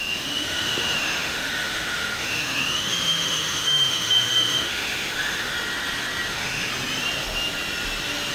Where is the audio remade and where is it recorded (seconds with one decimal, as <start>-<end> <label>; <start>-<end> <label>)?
0.0-5.5 remade; 5.5-6.3 recorded; 6.3-6.7 remade; 6.7-8.3 recorded